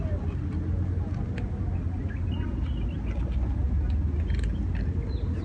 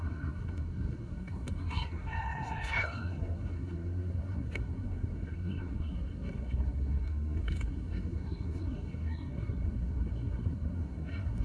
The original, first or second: first